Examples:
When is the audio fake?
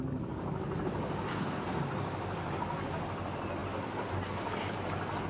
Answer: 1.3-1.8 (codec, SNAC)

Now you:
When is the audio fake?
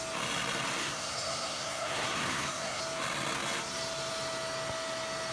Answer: 0.8-2.8 (codec, SNAC)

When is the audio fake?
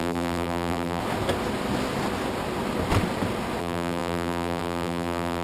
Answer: 0.0-1.0 (vocoder, BigVGAN v2); 3.6-5.4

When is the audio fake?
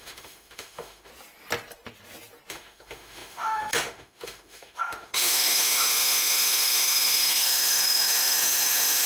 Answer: 0.0-1.1 (autoencoder, DAC-VAE); 2.5-9.1